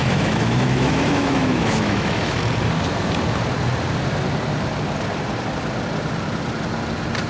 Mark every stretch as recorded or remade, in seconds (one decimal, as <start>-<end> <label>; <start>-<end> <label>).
0.0-2.4 remade; 2.4-7.3 recorded